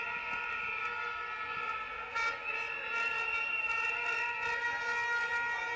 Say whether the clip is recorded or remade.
recorded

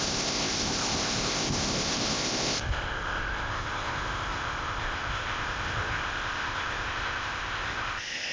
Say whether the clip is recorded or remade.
remade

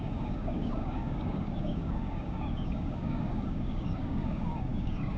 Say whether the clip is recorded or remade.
remade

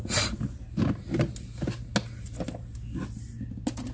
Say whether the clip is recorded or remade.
recorded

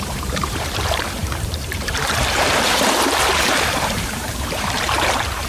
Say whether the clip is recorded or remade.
remade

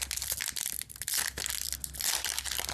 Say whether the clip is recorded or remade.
recorded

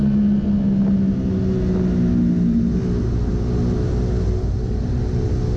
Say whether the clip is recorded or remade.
recorded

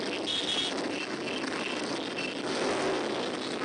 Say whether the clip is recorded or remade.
recorded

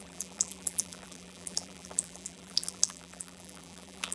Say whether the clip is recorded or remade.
remade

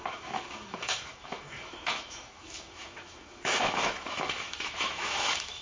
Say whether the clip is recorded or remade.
remade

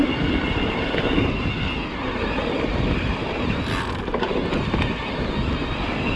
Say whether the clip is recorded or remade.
recorded